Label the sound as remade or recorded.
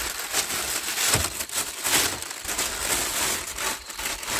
recorded